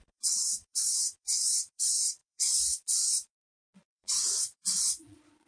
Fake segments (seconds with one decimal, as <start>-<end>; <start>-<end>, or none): 0.0-5.5